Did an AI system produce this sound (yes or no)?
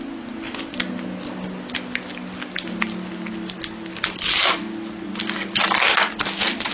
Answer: no